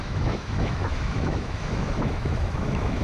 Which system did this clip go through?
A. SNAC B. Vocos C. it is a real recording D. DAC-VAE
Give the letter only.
D